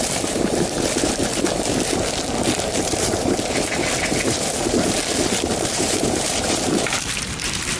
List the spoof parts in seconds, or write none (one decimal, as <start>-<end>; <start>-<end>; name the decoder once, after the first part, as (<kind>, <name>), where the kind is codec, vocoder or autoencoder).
0.0-1.3 (vocoder, BigVGAN v2); 2.8-7.8